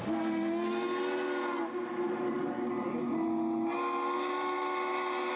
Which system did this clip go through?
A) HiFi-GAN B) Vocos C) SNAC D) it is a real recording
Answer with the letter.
D